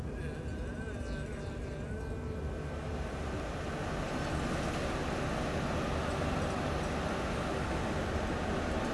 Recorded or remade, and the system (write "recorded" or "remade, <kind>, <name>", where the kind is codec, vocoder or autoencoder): recorded